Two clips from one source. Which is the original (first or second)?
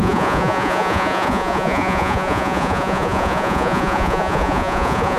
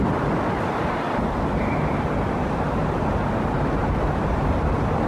second